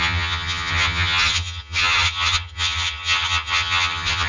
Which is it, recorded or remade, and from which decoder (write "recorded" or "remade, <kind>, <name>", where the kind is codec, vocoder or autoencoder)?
remade, vocoder, HiFi-GAN